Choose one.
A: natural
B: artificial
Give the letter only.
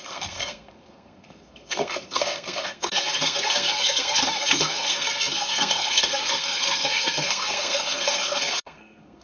B